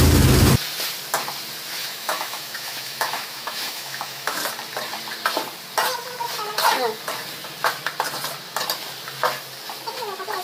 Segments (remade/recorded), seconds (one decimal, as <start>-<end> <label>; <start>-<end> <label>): 0.0-1.8 recorded; 1.8-4.4 remade; 4.4-10.4 recorded